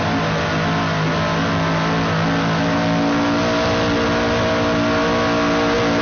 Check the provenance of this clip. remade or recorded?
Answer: recorded